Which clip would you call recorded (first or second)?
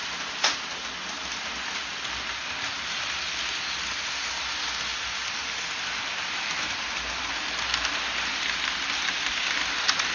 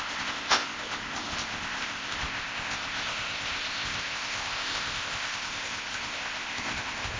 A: first